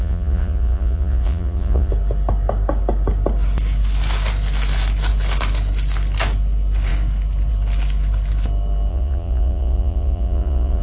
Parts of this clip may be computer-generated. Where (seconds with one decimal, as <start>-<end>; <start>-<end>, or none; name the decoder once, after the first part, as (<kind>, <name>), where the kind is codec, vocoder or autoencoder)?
0.0-1.9 (vocoder, Vocos); 8.9-10.8